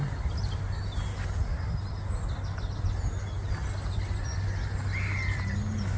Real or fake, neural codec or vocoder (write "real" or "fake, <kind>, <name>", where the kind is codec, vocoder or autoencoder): real